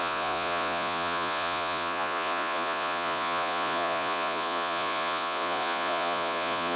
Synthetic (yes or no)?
yes